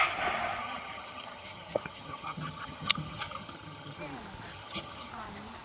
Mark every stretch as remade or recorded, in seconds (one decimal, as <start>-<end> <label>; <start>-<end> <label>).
0.0-0.6 recorded; 0.6-4.0 remade; 4.0-4.5 recorded; 4.5-5.1 remade; 5.1-5.6 recorded